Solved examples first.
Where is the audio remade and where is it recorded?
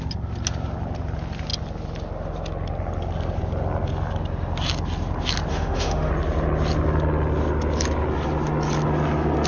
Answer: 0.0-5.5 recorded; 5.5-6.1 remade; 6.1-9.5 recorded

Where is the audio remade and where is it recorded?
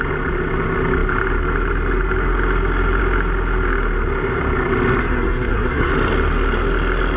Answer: 0.0-5.0 recorded; 5.0-5.9 remade; 5.9-7.2 recorded